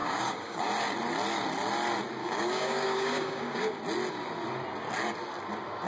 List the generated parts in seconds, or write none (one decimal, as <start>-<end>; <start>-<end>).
0.0-0.6; 2.2-3.8